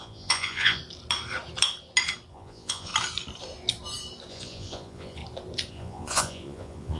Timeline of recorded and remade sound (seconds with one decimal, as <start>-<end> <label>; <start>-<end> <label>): 0.0-0.8 remade; 0.8-2.3 recorded; 2.3-2.9 remade; 2.9-4.3 recorded; 4.3-5.2 remade; 5.2-5.7 recorded; 5.7-7.0 remade